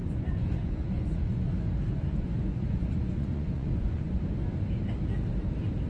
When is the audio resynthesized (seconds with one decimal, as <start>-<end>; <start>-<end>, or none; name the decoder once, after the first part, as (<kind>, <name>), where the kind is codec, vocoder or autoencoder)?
0.0-1.5 (vocoder, Vocos); 1.9-4.2